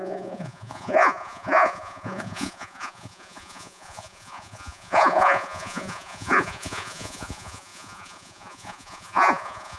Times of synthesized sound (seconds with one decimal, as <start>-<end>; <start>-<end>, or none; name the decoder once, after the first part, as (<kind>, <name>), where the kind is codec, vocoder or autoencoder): 0.0-9.8 (vocoder, Vocos)